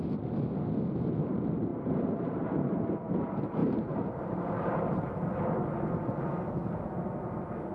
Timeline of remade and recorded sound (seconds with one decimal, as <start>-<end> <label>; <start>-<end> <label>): 0.0-1.7 recorded; 1.7-3.1 remade; 3.1-3.6 recorded; 3.6-5.0 remade; 5.0-7.7 recorded